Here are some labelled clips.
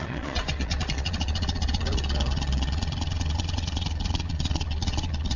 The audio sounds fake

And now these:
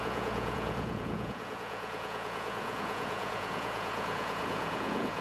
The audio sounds fake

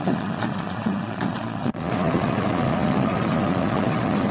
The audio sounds fake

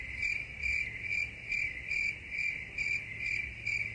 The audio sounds real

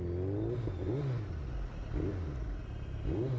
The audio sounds real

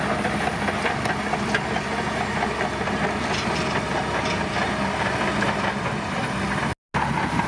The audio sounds real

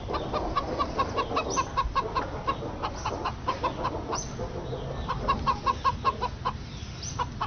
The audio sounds real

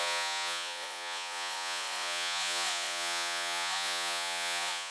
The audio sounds fake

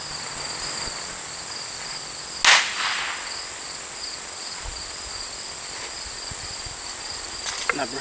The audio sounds real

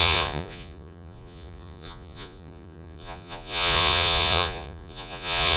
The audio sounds fake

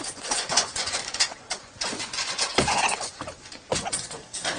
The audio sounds fake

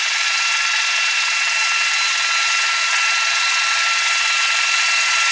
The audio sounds real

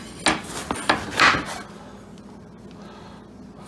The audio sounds real